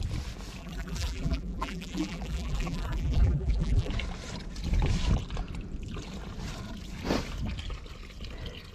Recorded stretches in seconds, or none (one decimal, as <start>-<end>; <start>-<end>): 0.0-0.6; 3.9-8.7